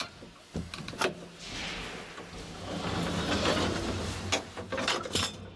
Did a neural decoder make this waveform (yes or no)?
no